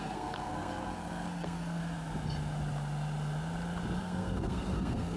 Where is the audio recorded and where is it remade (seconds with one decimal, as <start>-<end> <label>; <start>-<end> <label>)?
0.0-1.8 remade; 1.8-4.0 recorded; 4.0-5.2 remade